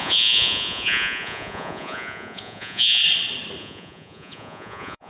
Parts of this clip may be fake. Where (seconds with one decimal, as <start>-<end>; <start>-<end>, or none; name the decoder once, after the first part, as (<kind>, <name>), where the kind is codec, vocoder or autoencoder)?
0.0-3.0 (vocoder, Vocos); 3.6-5.1